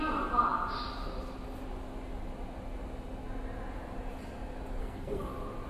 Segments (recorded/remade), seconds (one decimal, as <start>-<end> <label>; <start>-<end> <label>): 0.0-4.8 recorded; 4.8-5.3 remade; 5.3-5.7 recorded